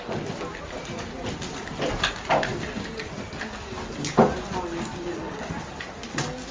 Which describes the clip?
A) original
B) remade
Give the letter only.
A